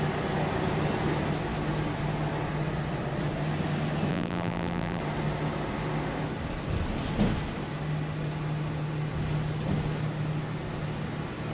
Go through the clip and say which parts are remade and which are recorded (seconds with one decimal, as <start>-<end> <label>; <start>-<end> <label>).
0.0-4.1 recorded; 4.1-5.0 remade; 5.0-11.5 recorded